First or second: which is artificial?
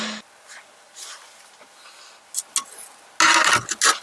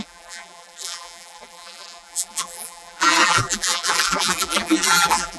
second